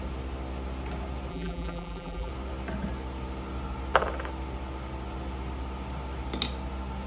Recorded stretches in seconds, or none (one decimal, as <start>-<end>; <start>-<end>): 0.0-1.3; 2.3-7.1